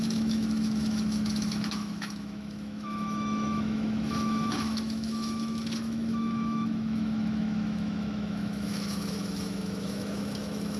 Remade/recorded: remade